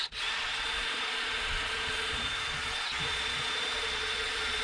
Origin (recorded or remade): remade